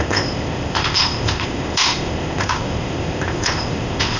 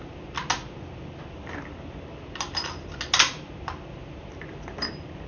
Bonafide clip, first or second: second